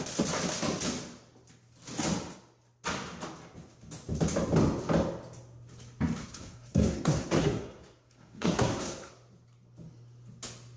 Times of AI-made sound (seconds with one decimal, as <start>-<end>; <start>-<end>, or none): 6.2-9.1

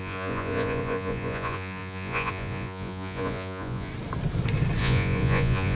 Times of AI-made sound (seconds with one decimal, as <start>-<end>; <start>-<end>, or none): 0.0-3.9; 4.8-5.7

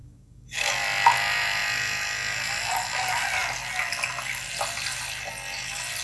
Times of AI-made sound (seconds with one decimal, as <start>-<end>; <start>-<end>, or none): 0.0-0.7